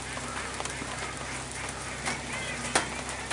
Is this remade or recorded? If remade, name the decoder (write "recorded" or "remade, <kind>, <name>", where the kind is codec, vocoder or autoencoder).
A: recorded